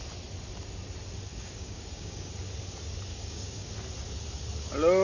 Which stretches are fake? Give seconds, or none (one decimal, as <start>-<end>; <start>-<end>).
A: 1.3-2.3; 3.1-3.7

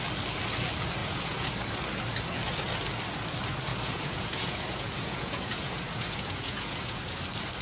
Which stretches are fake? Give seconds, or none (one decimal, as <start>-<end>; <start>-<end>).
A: 1.0-1.5; 3.7-7.0

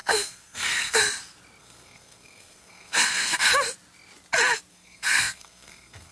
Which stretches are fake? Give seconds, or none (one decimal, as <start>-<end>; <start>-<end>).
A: 0.0-1.0; 1.6-3.5; 4.7-6.1

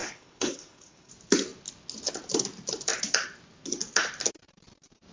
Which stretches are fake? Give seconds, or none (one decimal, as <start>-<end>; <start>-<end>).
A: 0.0-1.1

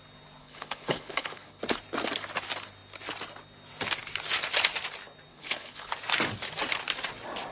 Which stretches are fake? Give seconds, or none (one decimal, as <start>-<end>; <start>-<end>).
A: 0.4-1.6; 5.3-5.9

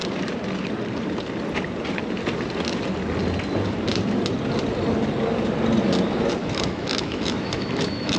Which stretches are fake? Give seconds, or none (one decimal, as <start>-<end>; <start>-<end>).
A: 6.4-8.2

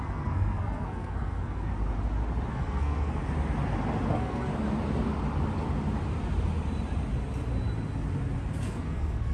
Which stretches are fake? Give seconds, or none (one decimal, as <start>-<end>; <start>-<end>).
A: 0.0-1.7; 2.5-3.2; 4.1-4.5; 8.6-9.3